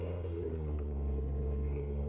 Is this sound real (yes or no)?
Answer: no